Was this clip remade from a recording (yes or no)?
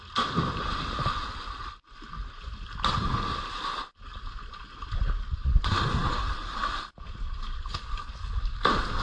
no